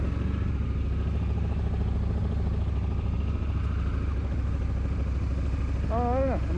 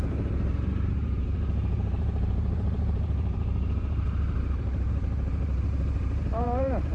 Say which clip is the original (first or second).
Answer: first